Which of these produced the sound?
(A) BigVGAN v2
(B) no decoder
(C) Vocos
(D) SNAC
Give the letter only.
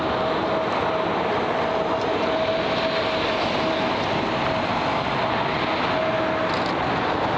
B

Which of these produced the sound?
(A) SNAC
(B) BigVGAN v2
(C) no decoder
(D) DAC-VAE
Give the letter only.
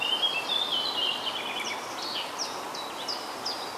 C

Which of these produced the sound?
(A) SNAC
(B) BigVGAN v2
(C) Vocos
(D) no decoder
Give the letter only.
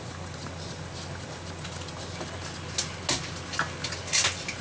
D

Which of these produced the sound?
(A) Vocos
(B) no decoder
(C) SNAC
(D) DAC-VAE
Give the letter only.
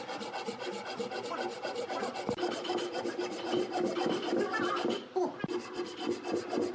B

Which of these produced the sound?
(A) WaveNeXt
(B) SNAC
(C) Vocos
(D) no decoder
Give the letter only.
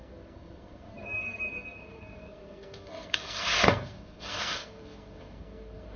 B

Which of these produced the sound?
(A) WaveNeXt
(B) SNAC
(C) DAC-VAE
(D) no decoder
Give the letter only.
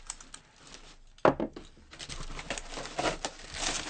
D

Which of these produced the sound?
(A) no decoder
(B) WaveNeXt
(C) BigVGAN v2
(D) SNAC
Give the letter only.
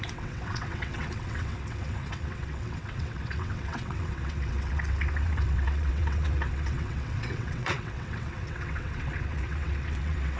B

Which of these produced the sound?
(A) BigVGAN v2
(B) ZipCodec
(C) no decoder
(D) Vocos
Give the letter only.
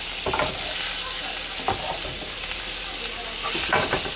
C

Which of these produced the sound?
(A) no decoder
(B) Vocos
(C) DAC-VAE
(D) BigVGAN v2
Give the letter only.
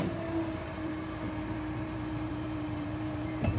D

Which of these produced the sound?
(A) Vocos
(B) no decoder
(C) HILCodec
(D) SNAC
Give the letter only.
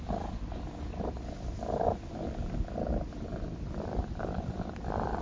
B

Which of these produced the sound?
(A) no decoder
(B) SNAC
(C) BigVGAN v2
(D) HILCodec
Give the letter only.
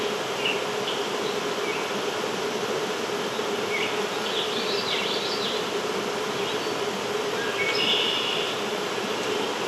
A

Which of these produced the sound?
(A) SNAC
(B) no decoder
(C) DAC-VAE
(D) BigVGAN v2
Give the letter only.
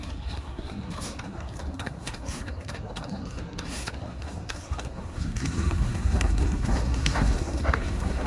A